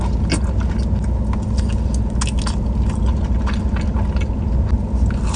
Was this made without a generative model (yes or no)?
yes